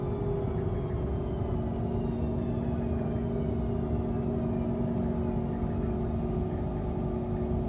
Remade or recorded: recorded